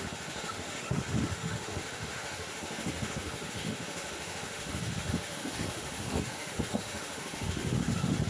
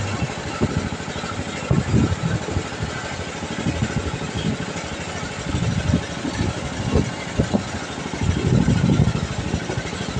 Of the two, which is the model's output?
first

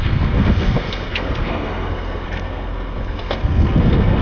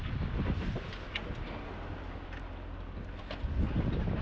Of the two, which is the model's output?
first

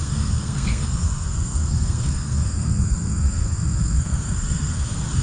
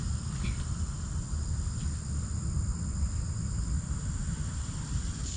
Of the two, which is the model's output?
first